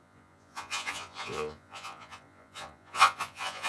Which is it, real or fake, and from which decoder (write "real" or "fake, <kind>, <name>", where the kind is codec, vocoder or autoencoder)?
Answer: fake, vocoder, Vocos